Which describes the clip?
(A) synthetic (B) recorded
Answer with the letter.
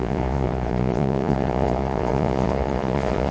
A